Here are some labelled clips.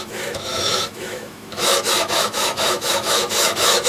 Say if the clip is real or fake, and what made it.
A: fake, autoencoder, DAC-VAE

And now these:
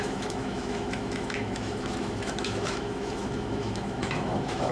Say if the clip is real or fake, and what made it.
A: fake, autoencoder, DAC-VAE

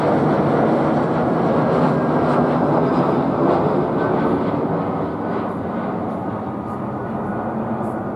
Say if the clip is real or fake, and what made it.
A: real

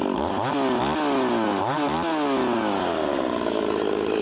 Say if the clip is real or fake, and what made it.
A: real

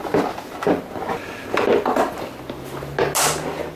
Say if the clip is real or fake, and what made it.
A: real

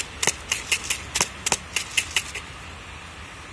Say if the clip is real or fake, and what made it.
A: real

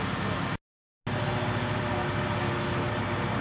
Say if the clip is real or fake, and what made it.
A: real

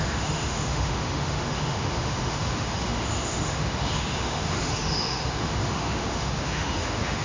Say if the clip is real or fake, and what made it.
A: fake, autoencoder, DAC-VAE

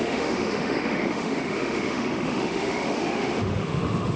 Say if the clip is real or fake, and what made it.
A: fake, autoencoder, DAC-VAE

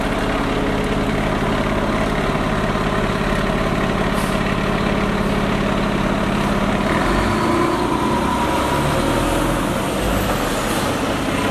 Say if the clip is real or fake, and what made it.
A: real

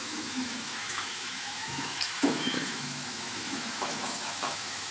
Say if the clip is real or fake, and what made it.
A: fake, autoencoder, DAC-VAE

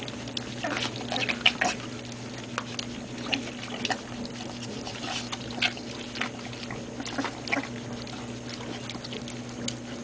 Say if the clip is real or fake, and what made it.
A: real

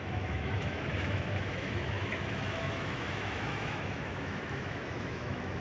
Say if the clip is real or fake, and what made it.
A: fake, autoencoder, DAC-VAE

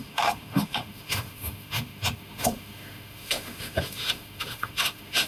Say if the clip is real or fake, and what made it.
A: fake, autoencoder, DAC-VAE